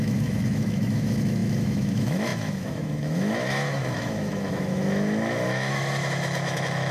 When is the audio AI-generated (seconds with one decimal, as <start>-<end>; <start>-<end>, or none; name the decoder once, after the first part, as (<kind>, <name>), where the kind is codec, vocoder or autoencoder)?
0.0-6.9 (autoencoder, DAC-VAE)